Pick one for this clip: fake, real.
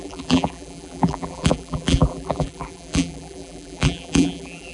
fake